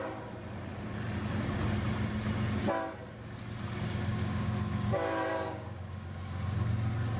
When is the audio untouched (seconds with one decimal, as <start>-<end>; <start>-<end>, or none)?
0.0-4.1; 6.7-7.2